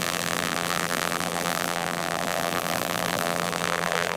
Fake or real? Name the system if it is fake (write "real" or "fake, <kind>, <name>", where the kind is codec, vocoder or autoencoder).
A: fake, vocoder, BigVGAN v2